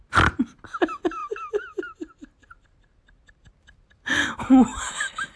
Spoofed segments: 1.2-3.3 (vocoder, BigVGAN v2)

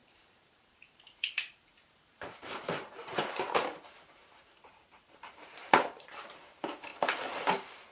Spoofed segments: 0.0-6.9 (vocoder, BigVGAN v2)

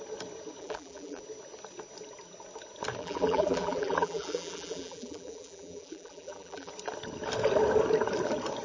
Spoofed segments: 0.6-1.2 (vocoder, BigVGAN v2); 3.0-6.7

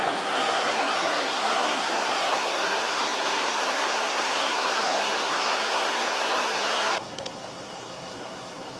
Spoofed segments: 0.0-8.8 (codec, SNAC)